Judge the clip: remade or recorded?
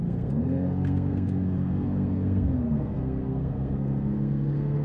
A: remade